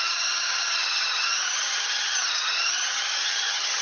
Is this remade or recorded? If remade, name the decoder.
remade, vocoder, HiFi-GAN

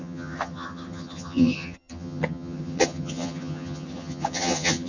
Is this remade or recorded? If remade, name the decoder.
remade, vocoder, HiFi-GAN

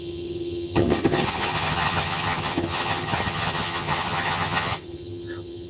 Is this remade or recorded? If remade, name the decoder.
remade, vocoder, HiFi-GAN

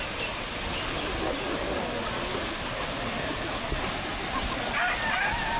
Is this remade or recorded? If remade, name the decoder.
recorded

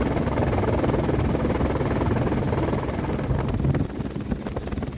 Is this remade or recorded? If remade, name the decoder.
recorded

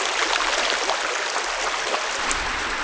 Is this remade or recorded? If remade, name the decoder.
recorded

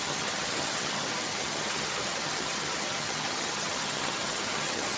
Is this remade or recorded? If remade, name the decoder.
remade, vocoder, HiFi-GAN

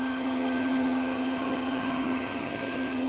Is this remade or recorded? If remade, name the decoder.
remade, vocoder, HiFi-GAN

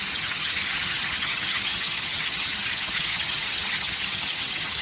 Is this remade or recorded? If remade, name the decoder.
remade, vocoder, HiFi-GAN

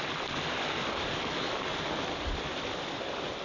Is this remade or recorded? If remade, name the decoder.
recorded